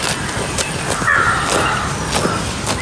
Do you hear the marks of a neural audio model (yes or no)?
no